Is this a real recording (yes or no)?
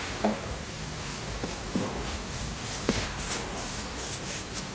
no